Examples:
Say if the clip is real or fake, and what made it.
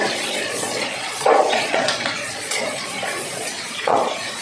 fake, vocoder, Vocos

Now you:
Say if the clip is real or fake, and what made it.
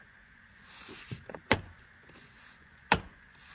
fake, vocoder, Vocos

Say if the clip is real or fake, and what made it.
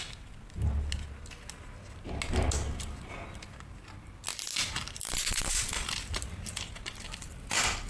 real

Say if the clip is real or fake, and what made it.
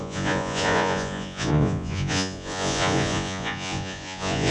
fake, vocoder, Vocos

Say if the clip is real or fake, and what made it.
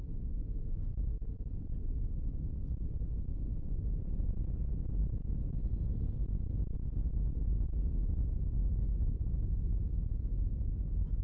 real